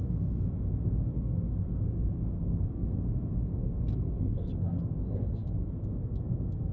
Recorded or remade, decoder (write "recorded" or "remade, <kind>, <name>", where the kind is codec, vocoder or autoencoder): remade, codec, SNAC